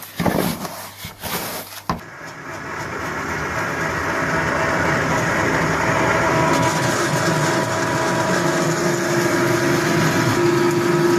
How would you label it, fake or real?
real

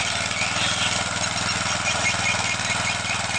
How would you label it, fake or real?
real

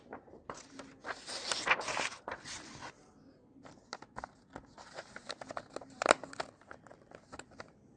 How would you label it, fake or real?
real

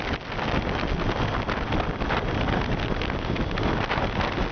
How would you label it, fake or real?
real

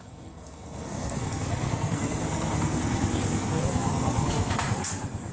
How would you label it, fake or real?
fake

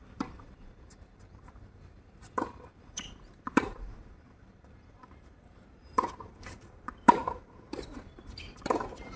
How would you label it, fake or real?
fake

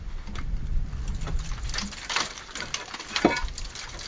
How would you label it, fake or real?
real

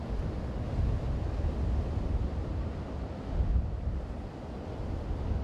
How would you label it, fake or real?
real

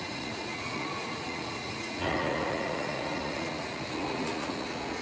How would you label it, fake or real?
fake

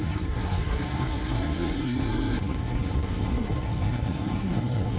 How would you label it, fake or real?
fake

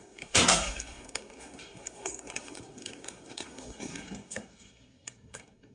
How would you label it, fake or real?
fake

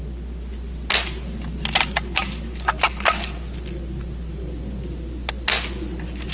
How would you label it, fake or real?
real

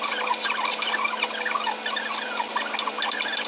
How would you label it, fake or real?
real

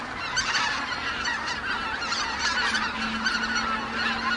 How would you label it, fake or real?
real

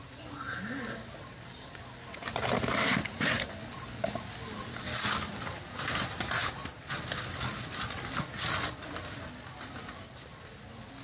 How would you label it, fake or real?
real